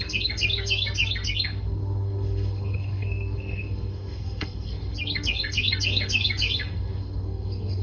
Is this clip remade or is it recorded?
remade